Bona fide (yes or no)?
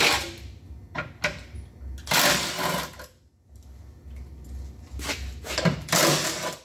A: yes